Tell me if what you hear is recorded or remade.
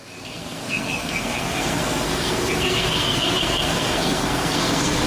remade